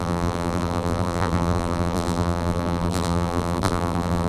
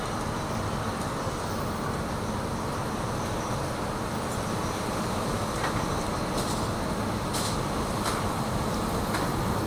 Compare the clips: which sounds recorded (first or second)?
second